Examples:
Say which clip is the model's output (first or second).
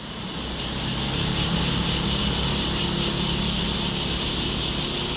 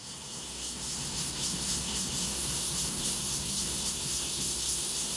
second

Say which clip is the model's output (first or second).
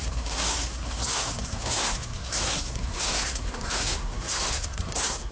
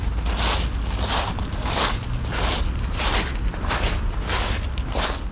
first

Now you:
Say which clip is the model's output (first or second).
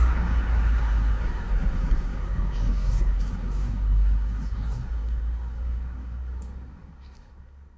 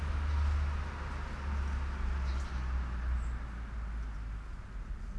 first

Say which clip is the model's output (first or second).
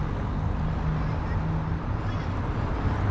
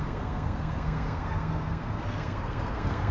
second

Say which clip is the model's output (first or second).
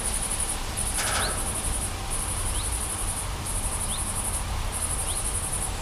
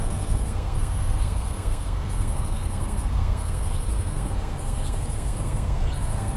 second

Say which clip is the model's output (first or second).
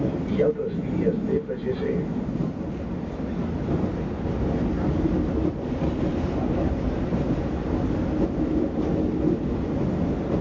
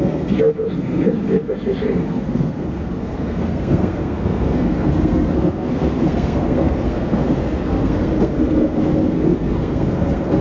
second